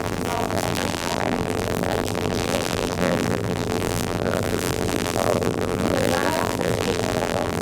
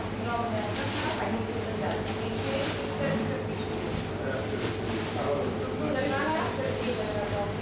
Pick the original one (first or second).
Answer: second